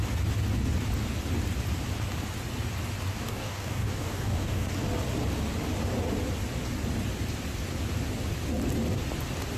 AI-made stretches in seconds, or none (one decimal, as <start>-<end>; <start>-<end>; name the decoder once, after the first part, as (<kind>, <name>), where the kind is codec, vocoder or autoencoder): 3.1-4.7 (codec, DAC)